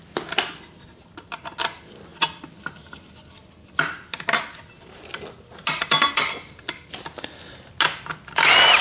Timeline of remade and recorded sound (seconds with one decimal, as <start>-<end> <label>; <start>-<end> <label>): 0.0-8.8 recorded